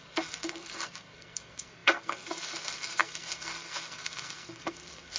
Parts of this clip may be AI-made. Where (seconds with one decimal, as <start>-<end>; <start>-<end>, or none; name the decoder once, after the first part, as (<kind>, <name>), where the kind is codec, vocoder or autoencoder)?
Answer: 0.0-5.2 (codec, SNAC)